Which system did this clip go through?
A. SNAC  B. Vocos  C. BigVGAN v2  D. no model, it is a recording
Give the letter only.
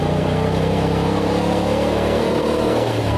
A